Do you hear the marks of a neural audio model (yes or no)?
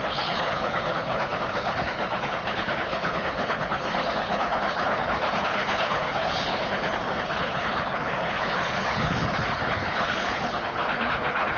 yes